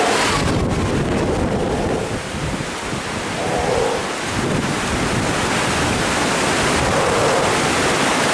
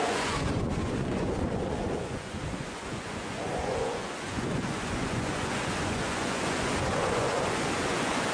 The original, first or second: first